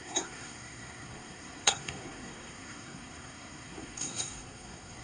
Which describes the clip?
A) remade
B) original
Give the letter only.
A